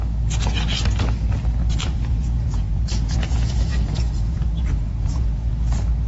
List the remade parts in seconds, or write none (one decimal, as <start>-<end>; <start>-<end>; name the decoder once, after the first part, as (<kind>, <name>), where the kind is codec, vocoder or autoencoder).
1.8-5.5 (vocoder, Vocos)